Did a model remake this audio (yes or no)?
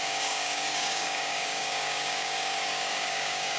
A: yes